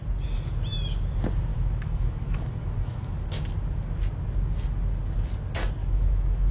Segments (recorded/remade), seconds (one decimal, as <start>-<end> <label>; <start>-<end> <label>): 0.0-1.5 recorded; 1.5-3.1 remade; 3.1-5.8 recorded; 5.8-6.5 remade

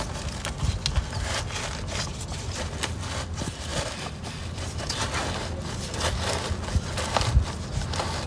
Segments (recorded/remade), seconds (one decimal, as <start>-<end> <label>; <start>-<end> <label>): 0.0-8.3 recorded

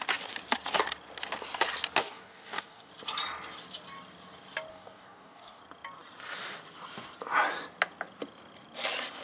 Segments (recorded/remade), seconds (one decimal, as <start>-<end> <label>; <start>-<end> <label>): 0.0-2.0 recorded; 2.0-2.9 remade; 2.9-4.7 recorded; 4.7-5.6 remade; 5.6-9.2 recorded

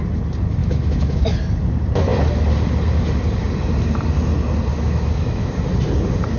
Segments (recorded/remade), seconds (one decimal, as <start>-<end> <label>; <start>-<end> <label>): 0.0-0.6 recorded; 0.6-1.2 remade; 1.2-4.7 recorded; 4.7-5.5 remade; 5.5-6.4 recorded

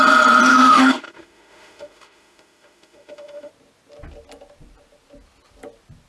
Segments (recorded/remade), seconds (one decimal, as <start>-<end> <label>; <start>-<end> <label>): 0.0-0.5 recorded; 0.5-3.5 remade; 3.5-6.1 recorded